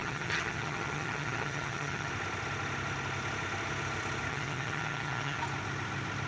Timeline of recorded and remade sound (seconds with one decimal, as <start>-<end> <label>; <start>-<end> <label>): 0.0-2.1 remade; 2.1-4.3 recorded; 4.3-5.4 remade; 5.4-6.3 recorded